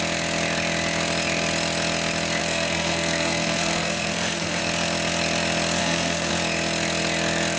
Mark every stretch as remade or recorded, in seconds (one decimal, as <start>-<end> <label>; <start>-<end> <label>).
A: 0.0-2.4 recorded; 2.4-4.6 remade; 4.6-5.8 recorded; 5.8-6.3 remade; 6.3-7.6 recorded